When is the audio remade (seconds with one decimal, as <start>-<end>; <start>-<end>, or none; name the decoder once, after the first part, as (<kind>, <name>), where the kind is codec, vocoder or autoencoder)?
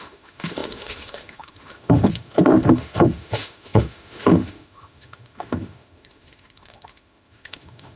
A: 0.0-8.0 (autoencoder, DAC-VAE)